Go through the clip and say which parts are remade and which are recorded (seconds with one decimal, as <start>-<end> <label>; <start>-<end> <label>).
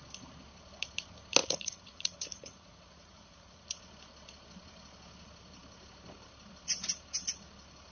0.0-1.4 recorded; 1.4-3.8 remade; 3.8-7.9 recorded